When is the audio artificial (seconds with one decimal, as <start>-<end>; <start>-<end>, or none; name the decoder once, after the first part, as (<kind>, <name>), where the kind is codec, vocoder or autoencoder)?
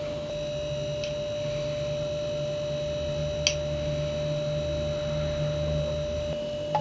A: none